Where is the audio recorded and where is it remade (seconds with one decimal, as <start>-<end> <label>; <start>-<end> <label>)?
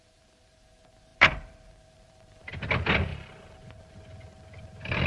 0.0-1.1 recorded; 1.1-2.7 remade; 2.7-5.1 recorded